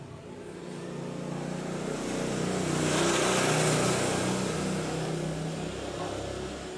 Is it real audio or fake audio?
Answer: real